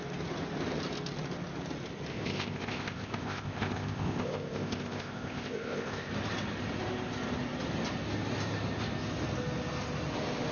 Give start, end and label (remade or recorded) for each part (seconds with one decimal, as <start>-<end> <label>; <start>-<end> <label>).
0.0-2.1 recorded; 2.1-6.1 remade; 6.1-10.5 recorded